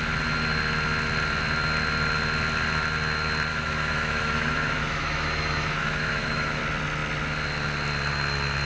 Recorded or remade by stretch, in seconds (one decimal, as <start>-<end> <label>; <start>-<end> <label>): 0.0-3.5 recorded; 3.5-6.6 remade; 6.6-8.6 recorded

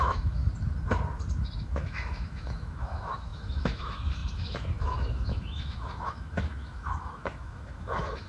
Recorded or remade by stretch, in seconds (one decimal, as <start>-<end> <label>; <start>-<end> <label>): 0.0-0.4 remade; 0.4-1.6 recorded; 1.6-8.3 remade